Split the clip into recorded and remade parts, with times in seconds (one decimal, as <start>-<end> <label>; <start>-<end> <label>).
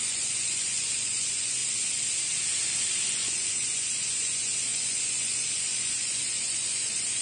0.0-1.6 remade; 1.6-3.1 recorded; 3.1-7.2 remade